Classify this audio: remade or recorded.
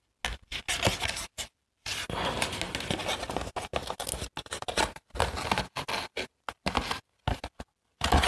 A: recorded